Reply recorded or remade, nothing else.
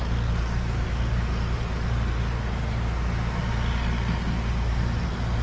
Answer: recorded